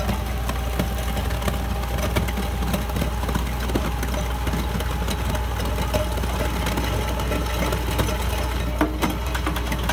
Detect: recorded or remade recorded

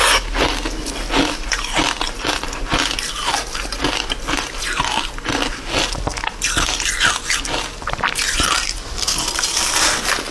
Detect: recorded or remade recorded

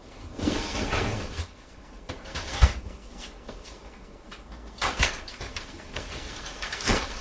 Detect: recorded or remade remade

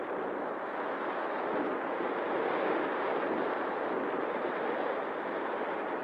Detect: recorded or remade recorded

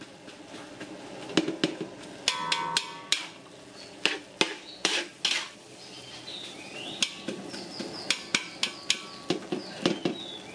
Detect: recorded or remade recorded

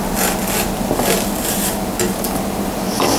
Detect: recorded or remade recorded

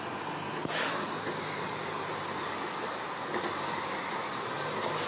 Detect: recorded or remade recorded